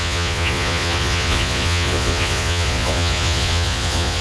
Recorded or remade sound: remade